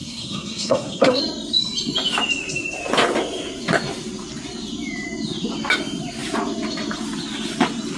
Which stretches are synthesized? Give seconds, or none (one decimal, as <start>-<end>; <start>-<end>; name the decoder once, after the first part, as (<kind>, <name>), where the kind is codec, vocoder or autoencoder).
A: 0.0-1.2 (codec, SNAC)